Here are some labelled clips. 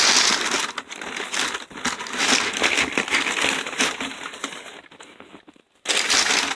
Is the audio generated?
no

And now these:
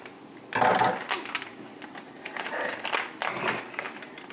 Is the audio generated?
no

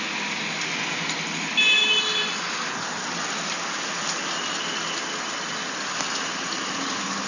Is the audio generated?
no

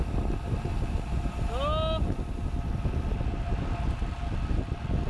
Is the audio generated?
no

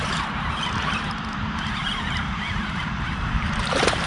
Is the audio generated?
yes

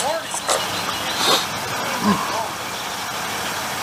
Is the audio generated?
no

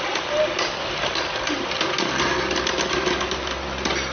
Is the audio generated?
no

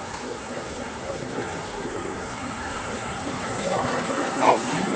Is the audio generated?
yes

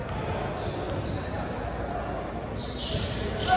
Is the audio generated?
no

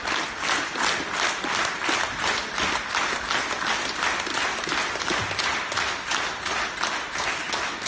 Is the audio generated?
no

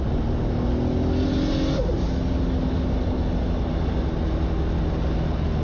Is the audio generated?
no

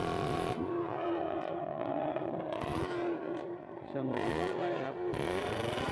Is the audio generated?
yes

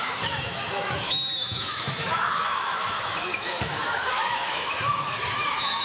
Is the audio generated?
yes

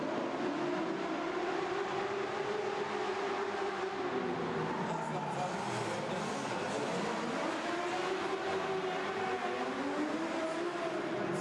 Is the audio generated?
no